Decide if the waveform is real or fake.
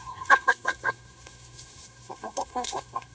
fake